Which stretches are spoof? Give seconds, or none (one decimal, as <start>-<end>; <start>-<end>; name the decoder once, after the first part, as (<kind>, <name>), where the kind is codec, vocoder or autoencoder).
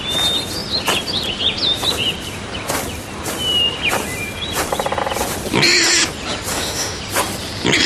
6.5-7.0 (autoencoder, DAC-VAE)